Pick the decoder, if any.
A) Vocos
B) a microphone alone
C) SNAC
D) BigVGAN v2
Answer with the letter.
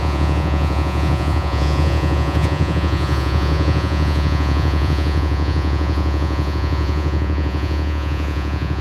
A